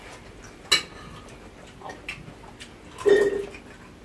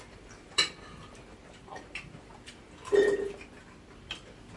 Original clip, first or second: first